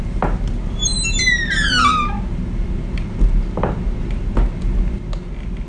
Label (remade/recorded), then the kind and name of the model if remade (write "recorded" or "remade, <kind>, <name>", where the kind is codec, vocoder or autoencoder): recorded